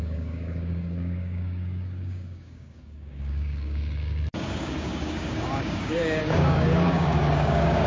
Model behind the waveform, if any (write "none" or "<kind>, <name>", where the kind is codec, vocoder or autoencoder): codec, DAC